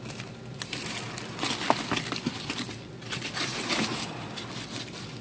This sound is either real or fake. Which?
real